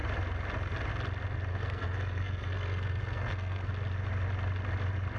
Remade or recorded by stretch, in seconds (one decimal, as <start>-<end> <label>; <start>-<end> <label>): 0.0-1.5 recorded; 1.5-3.7 remade; 3.7-5.2 recorded